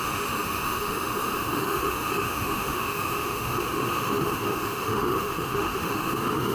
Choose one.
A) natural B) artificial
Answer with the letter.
B